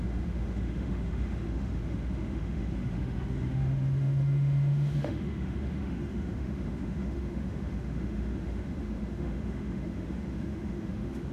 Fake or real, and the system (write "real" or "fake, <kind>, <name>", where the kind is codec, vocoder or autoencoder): fake, autoencoder, DAC-VAE